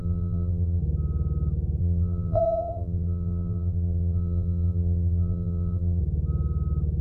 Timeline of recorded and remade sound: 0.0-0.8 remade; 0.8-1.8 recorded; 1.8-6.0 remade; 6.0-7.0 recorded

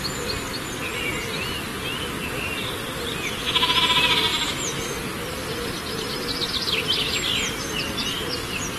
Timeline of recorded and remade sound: 0.0-8.8 recorded

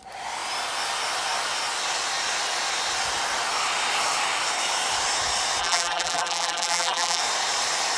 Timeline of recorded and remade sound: 0.0-5.6 recorded; 5.6-7.2 remade; 7.2-8.0 recorded

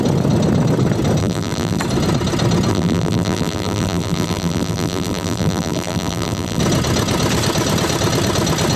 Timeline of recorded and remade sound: 0.0-1.2 recorded; 1.2-1.8 remade; 1.8-2.7 recorded; 2.7-6.6 remade; 6.6-8.8 recorded

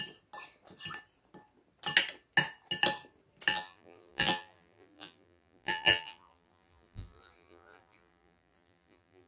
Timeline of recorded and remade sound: 0.0-3.5 recorded; 3.5-9.3 remade